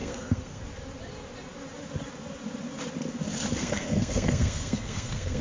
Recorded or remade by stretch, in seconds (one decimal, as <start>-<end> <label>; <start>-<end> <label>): 0.0-0.6 remade; 0.6-3.6 recorded; 3.6-5.4 remade